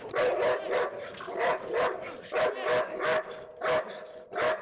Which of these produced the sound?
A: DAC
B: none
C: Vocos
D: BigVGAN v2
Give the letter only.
B